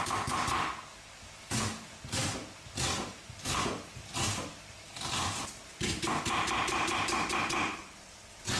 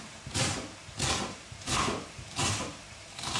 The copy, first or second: second